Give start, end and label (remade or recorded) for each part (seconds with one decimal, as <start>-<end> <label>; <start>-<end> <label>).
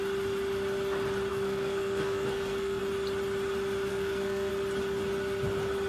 0.0-1.3 recorded; 1.3-2.8 remade; 2.8-3.9 recorded; 3.9-4.5 remade; 4.5-5.9 recorded